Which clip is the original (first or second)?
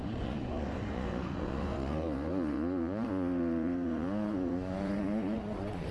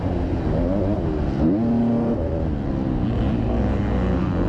second